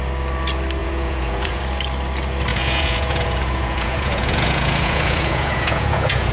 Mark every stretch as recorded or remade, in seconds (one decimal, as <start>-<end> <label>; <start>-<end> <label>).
0.0-0.8 recorded; 0.8-1.6 remade; 1.6-2.5 recorded; 2.5-6.3 remade